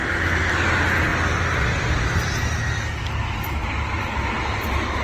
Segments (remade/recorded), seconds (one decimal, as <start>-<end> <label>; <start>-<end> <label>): 0.0-5.0 recorded